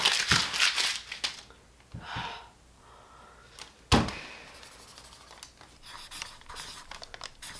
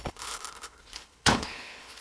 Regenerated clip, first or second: second